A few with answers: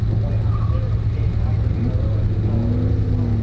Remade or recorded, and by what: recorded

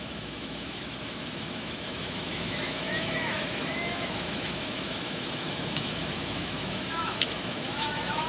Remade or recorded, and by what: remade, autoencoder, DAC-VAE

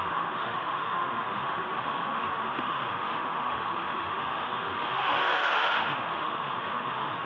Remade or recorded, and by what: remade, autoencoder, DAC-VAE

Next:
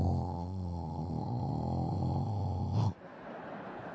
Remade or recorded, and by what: recorded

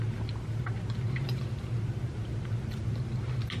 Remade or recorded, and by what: recorded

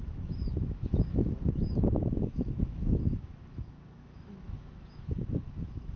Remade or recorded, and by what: remade, autoencoder, DAC-VAE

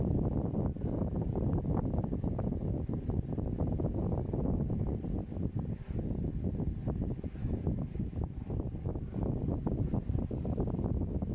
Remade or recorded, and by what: recorded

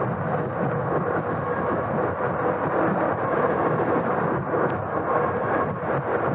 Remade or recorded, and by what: recorded